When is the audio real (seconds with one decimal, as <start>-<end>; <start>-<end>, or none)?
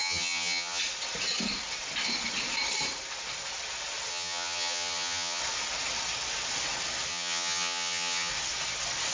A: 0.8-4.1; 5.4-7.1; 8.3-9.1